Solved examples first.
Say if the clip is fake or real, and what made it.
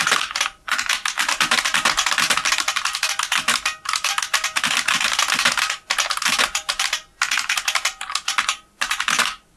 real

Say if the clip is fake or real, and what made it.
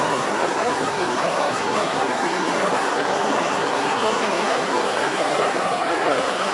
fake, codec, SNAC